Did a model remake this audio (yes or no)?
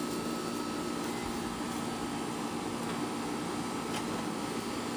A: no